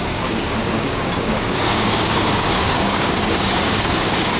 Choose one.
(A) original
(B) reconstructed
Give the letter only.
B